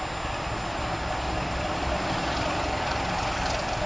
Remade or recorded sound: recorded